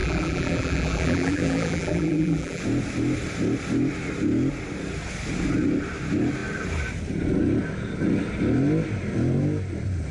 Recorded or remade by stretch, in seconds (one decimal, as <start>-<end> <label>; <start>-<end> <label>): 0.0-2.6 remade; 2.6-10.1 recorded